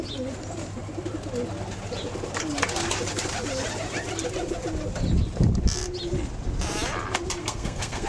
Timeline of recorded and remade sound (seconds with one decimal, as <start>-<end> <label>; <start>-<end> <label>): 0.0-7.4 recorded; 7.4-8.1 remade